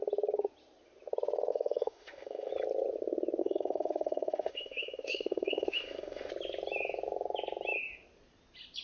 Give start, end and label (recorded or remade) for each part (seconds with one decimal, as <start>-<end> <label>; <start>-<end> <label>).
0.0-1.5 recorded; 1.5-2.5 remade; 2.5-3.4 recorded; 3.4-6.3 remade; 6.3-8.8 recorded